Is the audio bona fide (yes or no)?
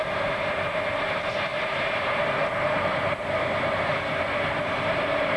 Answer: yes